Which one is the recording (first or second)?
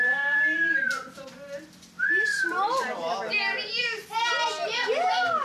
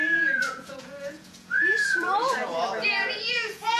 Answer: first